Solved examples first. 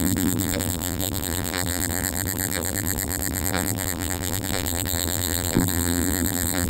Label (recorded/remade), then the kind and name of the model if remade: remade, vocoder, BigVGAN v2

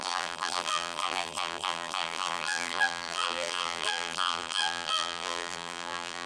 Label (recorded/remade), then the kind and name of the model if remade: remade, vocoder, BigVGAN v2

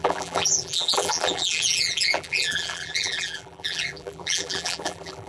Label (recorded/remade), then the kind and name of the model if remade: remade, vocoder, BigVGAN v2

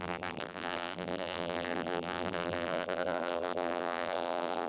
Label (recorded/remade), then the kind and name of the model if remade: remade, vocoder, BigVGAN v2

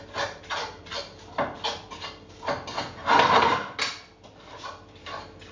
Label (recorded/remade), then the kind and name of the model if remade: recorded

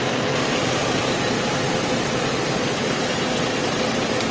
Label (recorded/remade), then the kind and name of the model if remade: remade, vocoder, BigVGAN v2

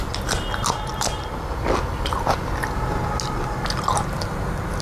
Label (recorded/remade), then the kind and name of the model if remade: recorded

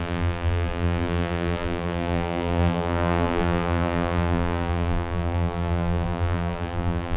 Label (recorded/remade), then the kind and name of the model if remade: remade, vocoder, BigVGAN v2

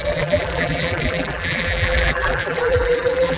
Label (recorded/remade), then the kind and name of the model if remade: remade, vocoder, BigVGAN v2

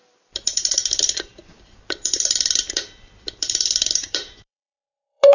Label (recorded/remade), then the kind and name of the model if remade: remade, vocoder, BigVGAN v2